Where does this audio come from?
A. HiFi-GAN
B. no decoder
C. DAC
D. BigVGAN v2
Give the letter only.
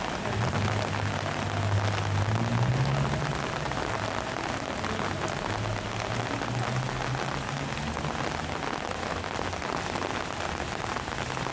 B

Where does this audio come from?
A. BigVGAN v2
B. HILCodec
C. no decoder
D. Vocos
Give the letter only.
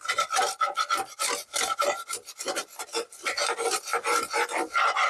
C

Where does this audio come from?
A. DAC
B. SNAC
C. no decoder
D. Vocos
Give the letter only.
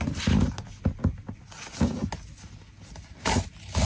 C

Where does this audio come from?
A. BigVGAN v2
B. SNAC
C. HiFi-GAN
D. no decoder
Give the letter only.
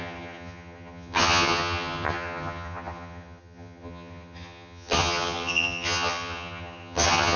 C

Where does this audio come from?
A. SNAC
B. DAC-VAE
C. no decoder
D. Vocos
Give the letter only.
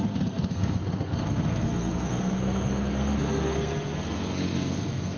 A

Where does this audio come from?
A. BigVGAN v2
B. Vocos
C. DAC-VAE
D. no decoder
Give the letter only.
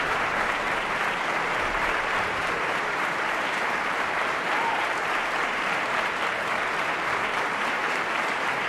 A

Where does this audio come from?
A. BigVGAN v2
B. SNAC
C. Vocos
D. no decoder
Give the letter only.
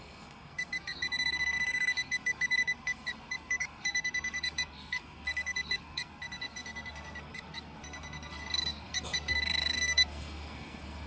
B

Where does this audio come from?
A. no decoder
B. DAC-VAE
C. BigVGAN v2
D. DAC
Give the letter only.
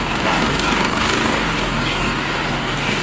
D